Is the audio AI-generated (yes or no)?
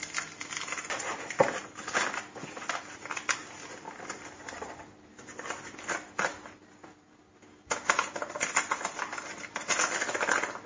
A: no